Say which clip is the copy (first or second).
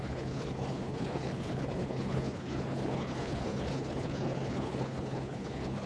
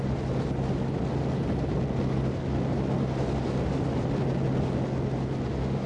first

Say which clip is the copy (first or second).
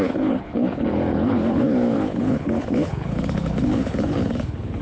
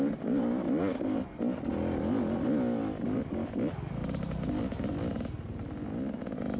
first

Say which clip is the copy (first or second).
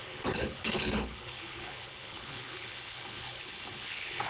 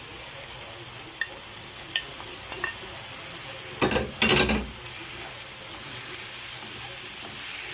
first